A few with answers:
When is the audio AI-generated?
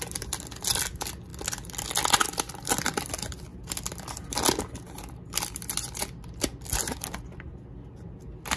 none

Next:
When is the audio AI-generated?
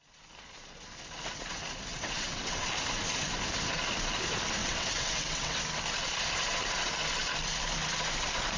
1.9-2.7 (vocoder, WaveNeXt); 4.6-5.6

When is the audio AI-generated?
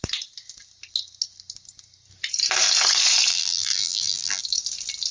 3.3-4.4 (vocoder, BigVGAN v2)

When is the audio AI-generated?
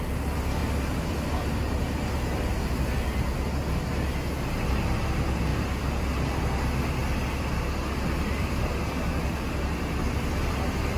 0.6-1.3 (vocoder, BigVGAN v2); 5.5-6.0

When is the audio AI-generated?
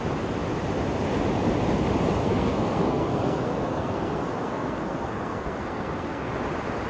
2.2-6.3 (codec, SNAC)